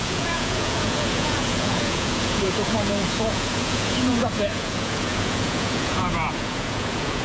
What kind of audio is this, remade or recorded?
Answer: remade